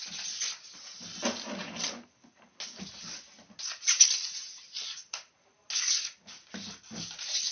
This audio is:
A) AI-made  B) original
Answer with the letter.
B